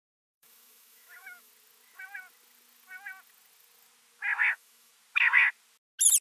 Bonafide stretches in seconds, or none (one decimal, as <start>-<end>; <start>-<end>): 1.5-4.5; 4.9-6.2